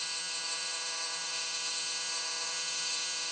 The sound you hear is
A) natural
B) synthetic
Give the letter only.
B